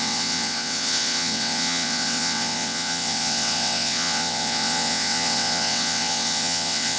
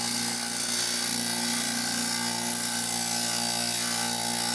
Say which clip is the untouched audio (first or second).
second